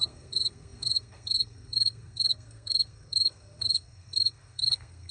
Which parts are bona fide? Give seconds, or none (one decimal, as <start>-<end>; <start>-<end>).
none

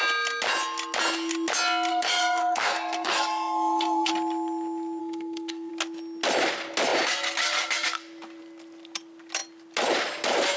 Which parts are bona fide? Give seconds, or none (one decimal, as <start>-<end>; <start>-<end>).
0.0-1.9; 4.1-5.0; 5.7-10.6

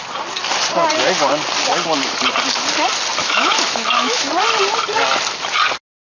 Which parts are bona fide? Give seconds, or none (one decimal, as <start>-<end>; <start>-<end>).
0.0-3.2; 4.3-6.0

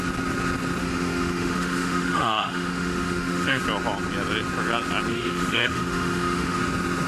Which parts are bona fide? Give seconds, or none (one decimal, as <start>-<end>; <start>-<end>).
0.0-0.8; 3.6-5.1; 6.6-7.1

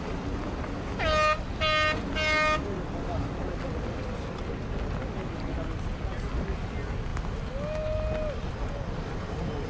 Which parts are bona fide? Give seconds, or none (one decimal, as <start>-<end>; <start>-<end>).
0.0-9.7

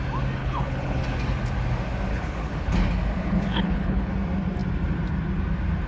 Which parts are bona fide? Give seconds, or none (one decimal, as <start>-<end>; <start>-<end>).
0.0-0.4; 1.0-2.1; 2.7-3.2; 4.1-5.9

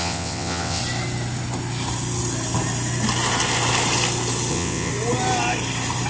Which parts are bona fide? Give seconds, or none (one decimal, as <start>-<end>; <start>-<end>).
0.8-4.5; 4.9-6.1

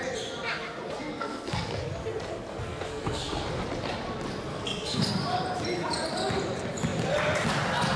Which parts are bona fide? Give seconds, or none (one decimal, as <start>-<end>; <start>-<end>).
0.0-1.0; 1.8-2.5; 3.6-4.5; 5.1-8.0